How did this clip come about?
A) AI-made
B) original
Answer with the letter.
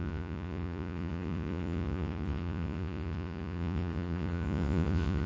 A